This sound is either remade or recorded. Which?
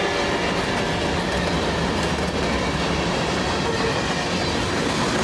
recorded